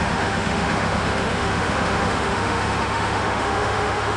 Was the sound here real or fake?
fake